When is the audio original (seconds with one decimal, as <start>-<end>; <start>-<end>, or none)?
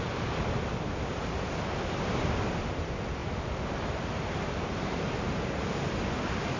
0.0-3.2; 5.7-6.6